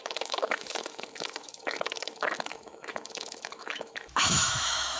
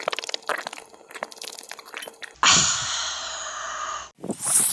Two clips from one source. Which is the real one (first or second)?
second